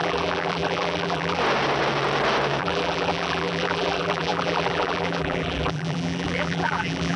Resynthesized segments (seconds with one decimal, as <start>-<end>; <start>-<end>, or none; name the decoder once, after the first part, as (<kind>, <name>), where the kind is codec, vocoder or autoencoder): 0.0-1.4 (vocoder, BigVGAN v2); 2.6-7.2